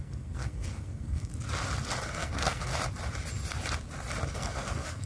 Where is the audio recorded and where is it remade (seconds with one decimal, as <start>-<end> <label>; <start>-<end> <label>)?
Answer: 0.0-1.3 remade; 1.3-2.0 recorded; 2.0-2.7 remade; 2.7-4.3 recorded; 4.3-5.1 remade